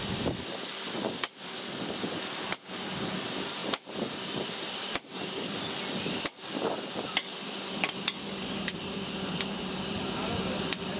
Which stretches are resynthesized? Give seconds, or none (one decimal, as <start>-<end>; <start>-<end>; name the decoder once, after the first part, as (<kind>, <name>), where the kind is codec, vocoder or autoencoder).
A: 0.0-11.0 (vocoder, BigVGAN v2)